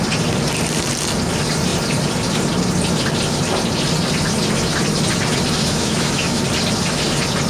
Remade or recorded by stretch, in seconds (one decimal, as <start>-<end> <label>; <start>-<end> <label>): 0.0-5.6 recorded; 5.6-6.4 remade; 6.4-7.5 recorded